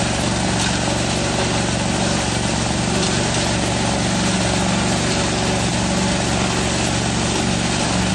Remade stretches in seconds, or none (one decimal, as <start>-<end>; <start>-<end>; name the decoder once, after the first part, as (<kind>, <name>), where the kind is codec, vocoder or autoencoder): none